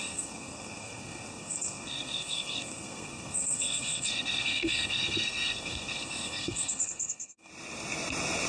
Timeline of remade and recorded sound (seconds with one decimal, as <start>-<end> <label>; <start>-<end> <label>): 0.0-7.5 remade; 7.5-8.5 recorded